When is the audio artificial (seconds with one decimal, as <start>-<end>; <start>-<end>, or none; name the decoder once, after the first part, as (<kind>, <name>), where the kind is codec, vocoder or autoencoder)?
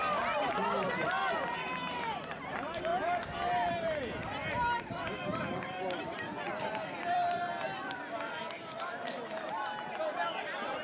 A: 0.0-2.9 (vocoder, BigVGAN v2); 3.7-10.8